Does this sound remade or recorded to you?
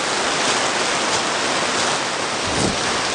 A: recorded